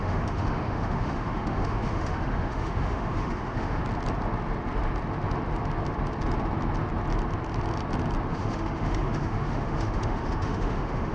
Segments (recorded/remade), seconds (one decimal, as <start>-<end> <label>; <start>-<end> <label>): 0.0-3.8 remade; 3.8-8.3 recorded; 8.3-11.1 remade